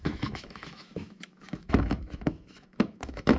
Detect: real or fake fake